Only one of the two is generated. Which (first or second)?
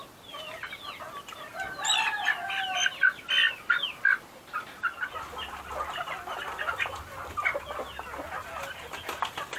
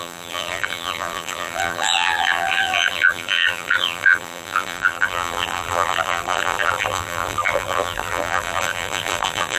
second